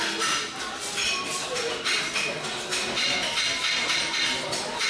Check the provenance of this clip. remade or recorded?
recorded